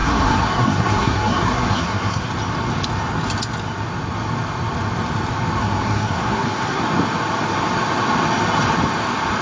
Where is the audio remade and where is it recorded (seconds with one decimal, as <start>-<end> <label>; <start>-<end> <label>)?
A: 0.0-2.3 remade; 2.3-5.6 recorded; 5.6-6.8 remade; 6.8-9.4 recorded